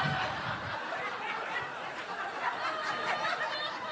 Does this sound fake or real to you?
fake